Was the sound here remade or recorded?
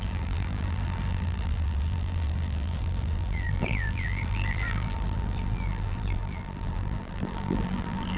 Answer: remade